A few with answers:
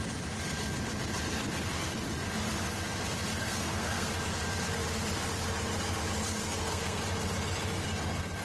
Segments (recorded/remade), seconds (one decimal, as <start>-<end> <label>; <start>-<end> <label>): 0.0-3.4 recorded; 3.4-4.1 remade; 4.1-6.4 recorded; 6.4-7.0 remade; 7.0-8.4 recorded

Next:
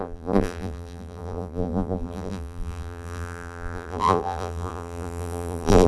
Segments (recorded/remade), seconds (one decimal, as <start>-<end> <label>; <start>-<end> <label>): 0.0-5.9 remade

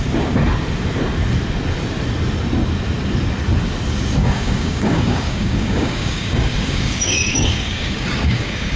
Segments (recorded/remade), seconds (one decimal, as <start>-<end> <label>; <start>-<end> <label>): 0.0-4.2 recorded; 4.2-8.8 remade

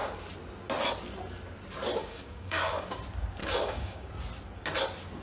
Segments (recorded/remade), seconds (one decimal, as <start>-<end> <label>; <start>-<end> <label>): 0.0-2.0 recorded; 2.0-3.0 remade; 3.0-3.4 recorded; 3.4-4.1 remade; 4.1-5.2 recorded